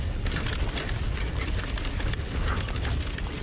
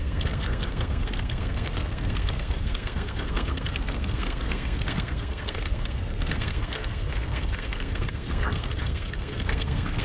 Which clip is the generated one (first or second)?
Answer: second